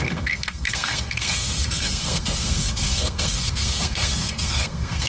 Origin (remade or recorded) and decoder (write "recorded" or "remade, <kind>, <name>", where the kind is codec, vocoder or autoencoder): remade, codec, SNAC